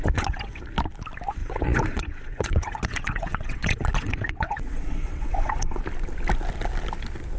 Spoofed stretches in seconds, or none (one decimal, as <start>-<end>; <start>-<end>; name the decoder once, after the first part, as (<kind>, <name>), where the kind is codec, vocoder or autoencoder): 0.0-0.6 (vocoder, WaveNeXt); 1.4-5.8